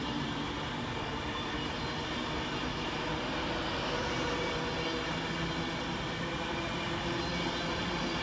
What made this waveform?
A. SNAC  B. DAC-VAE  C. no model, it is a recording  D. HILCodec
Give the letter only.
C